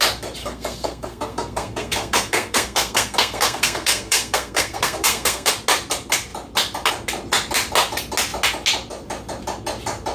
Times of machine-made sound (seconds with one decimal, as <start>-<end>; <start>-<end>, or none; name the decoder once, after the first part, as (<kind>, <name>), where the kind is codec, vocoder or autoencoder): 0.4-5.5 (codec, SNAC)